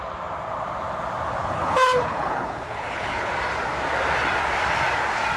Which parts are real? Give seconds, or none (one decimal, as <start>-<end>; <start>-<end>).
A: 0.0-1.4; 3.3-5.4